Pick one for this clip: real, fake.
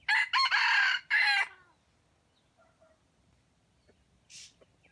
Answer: real